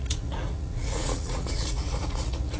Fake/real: fake